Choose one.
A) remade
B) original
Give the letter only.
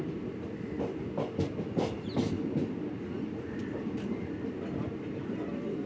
B